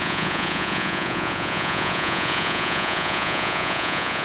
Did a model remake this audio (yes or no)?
yes